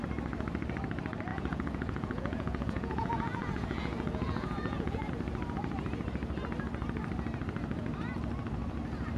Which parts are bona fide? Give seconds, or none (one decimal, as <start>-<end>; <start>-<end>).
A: 0.0-1.3; 5.1-9.2